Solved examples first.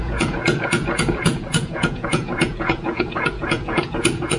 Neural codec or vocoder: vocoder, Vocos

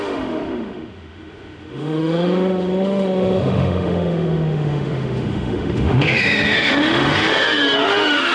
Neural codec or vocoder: autoencoder, DAC-VAE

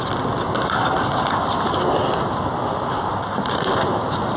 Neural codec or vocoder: none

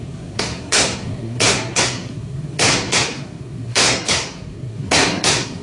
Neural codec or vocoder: codec, SNAC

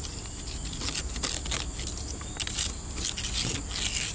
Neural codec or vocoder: none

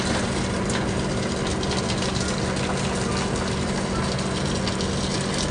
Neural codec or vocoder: none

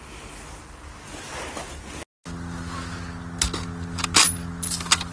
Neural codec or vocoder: none